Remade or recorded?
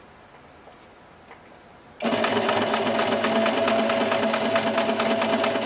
recorded